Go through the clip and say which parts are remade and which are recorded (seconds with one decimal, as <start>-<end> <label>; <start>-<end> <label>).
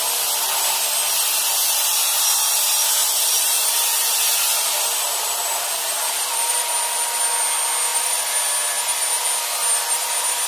0.0-1.4 recorded; 1.4-6.6 remade; 6.6-10.5 recorded